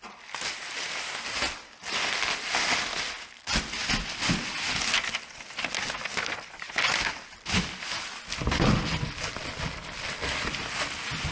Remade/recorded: recorded